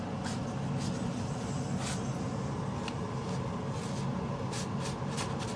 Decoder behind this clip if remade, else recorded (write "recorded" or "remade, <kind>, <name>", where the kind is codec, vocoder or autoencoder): recorded